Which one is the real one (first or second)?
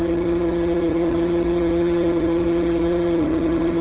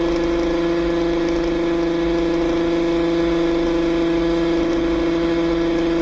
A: second